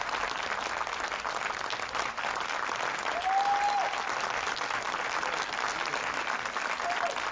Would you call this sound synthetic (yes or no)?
no